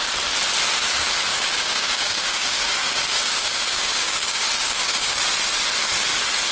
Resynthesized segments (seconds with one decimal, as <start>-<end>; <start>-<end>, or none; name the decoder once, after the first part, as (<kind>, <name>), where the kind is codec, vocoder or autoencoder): 1.3-5.2 (codec, DAC)